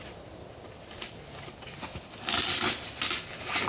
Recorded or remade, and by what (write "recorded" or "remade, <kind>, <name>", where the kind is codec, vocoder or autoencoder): recorded